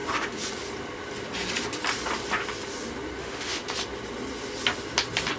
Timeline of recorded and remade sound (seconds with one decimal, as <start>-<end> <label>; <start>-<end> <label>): 0.0-3.2 recorded; 3.2-3.6 remade; 3.6-5.4 recorded